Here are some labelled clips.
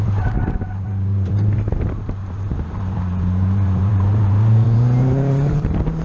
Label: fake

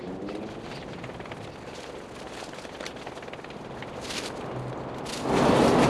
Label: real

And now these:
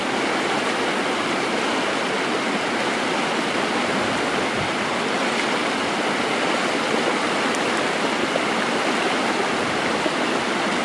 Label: real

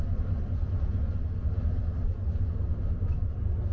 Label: real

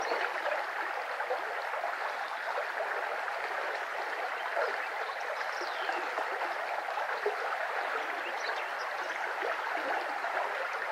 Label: real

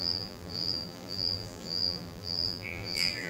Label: fake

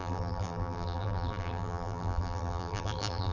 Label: fake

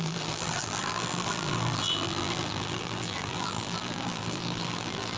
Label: fake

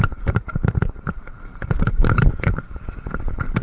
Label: fake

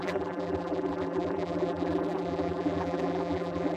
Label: fake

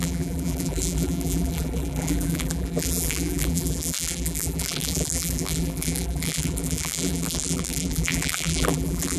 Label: fake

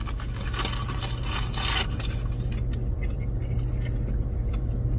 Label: real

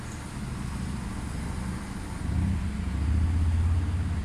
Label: real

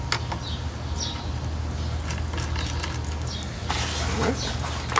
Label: real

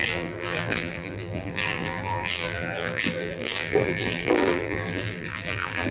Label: fake